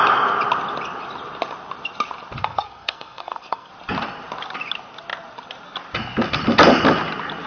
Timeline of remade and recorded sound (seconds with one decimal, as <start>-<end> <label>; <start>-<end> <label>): 0.0-2.4 recorded; 2.4-3.7 remade; 3.7-7.5 recorded